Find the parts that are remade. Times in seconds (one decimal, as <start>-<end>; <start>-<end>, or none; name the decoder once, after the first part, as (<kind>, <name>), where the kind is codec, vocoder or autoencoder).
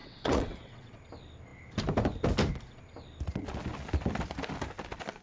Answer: 0.0-1.0 (vocoder, WaveNeXt)